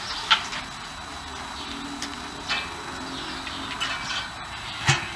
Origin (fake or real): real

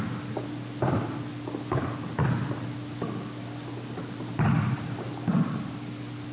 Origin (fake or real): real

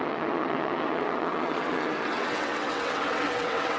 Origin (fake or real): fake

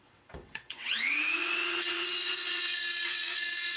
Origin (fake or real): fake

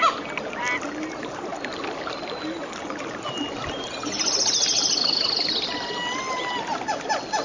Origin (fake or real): real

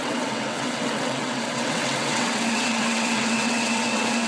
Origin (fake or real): fake